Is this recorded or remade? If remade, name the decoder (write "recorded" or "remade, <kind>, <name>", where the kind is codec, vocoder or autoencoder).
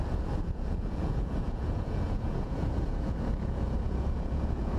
remade, vocoder, Vocos